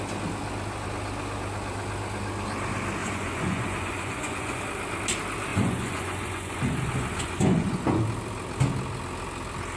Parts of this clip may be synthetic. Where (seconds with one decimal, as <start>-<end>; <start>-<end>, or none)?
3.0-4.6; 5.5-8.0